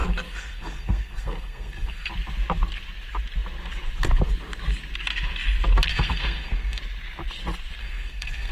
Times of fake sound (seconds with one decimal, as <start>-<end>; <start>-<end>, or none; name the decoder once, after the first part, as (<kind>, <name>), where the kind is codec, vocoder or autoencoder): 0.0-2.1 (codec, SNAC); 5.9-6.8; 7.8-8.5